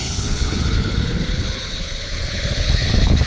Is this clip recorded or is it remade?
remade